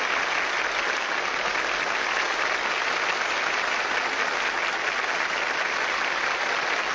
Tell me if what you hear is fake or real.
real